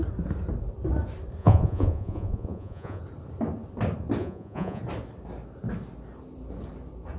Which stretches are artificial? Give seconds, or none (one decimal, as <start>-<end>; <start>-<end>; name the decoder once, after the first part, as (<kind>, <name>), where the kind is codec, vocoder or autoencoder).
1.4-3.0 (vocoder, Vocos); 4.2-4.8